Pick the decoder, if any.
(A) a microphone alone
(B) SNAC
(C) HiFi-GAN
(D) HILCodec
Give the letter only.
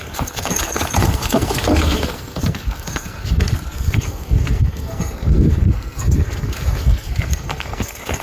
B